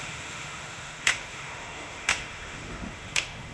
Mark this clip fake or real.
fake